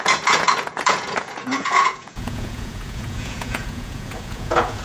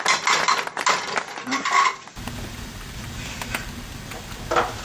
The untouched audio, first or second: second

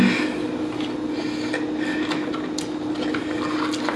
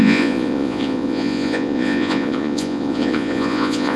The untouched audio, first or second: first